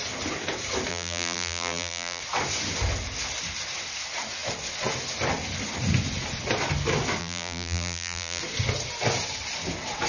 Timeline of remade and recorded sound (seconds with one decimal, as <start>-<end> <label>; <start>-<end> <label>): 0.0-0.9 recorded; 0.9-2.2 remade; 2.2-7.2 recorded; 7.2-8.4 remade; 8.4-10.1 recorded